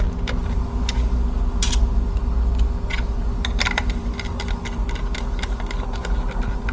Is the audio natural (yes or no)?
yes